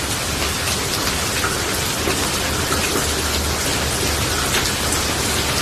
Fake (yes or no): no